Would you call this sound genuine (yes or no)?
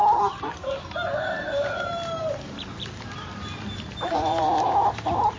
no